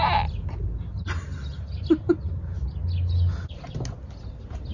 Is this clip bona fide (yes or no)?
yes